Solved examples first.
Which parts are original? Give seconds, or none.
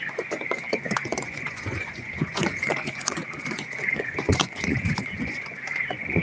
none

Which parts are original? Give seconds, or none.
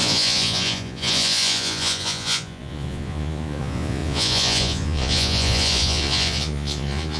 none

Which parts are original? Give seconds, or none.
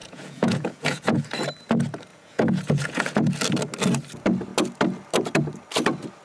1.2-2.1; 3.3-6.2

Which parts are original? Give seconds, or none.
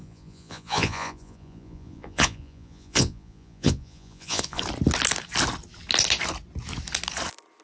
4.6-7.6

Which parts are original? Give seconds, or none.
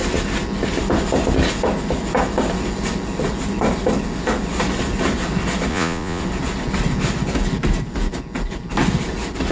0.0-5.7; 6.2-9.5